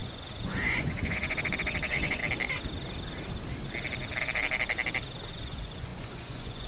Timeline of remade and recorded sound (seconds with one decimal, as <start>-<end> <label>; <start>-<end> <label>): 0.0-2.2 remade; 2.2-5.3 recorded; 5.3-6.7 remade